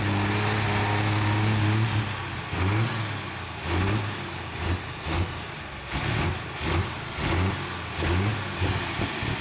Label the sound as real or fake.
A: real